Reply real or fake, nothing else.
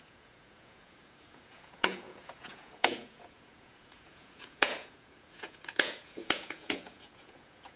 fake